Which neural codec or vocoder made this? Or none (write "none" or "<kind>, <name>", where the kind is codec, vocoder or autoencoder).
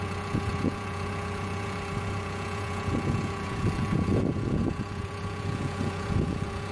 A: vocoder, Vocos